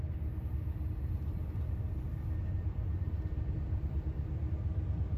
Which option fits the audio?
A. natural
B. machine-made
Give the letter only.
A